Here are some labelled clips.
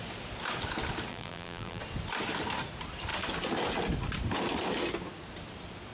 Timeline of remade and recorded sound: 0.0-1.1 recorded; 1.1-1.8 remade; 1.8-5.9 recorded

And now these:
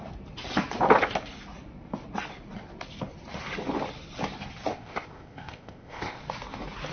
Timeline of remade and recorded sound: 0.0-4.7 recorded; 4.7-6.2 remade; 6.2-6.9 recorded

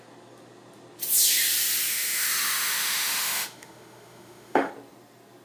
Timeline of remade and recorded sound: 0.0-1.9 recorded; 1.9-4.7 remade; 4.7-5.4 recorded

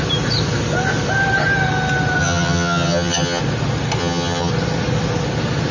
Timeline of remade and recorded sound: 0.0-2.2 recorded; 2.2-3.4 remade; 3.4-4.0 recorded; 4.0-4.5 remade; 4.5-5.7 recorded

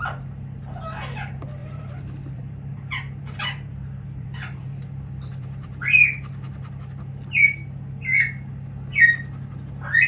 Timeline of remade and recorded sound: 0.0-1.6 recorded; 1.6-6.7 remade; 6.7-10.1 recorded

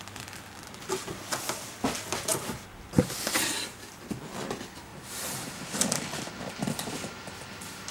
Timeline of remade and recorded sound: 0.0-4.9 recorded; 4.9-6.3 remade; 6.3-7.9 recorded

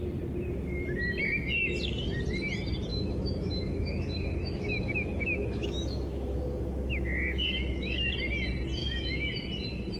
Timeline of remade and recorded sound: 0.0-2.9 recorded; 2.9-8.1 remade; 8.1-8.8 recorded; 8.8-9.3 remade; 9.3-10.0 recorded

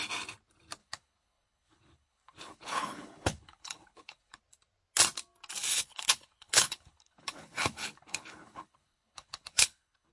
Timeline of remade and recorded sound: 0.0-0.8 recorded; 0.8-4.4 remade; 4.4-5.7 recorded; 5.7-10.1 remade